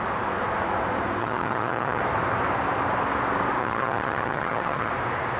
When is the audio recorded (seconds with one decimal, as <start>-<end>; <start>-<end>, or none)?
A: 0.0-1.2; 2.0-3.6; 4.9-5.4